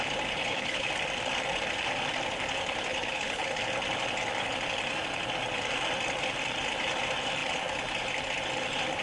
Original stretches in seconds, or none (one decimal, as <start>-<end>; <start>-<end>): 0.0-0.4; 0.9-2.9; 3.6-9.0